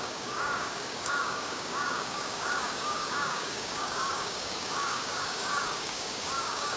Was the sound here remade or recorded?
remade